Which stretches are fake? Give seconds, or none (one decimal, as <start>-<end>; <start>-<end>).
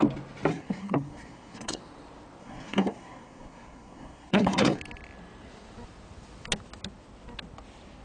0.5-1.8; 2.4-4.8